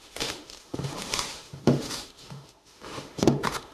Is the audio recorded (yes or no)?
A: no